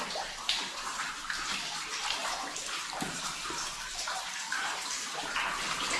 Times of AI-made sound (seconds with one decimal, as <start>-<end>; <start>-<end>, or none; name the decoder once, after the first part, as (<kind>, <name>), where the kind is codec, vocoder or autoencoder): 0.0-6.0 (vocoder, BigVGAN v2)